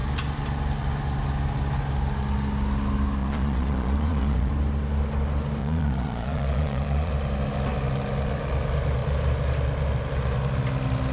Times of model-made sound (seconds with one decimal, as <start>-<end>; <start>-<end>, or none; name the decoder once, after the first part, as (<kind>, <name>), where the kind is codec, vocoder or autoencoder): 3.2-4.5 (vocoder, Vocos); 5.6-7.1